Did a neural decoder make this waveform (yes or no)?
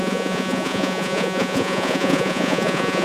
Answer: yes